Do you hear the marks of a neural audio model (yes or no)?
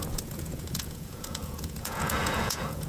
yes